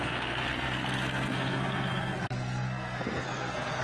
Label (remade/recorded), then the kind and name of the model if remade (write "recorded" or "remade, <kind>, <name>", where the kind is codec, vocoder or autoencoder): remade, codec, SNAC